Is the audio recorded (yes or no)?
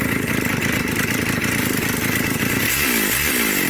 yes